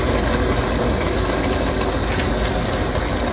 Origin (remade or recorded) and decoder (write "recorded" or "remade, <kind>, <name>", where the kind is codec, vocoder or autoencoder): recorded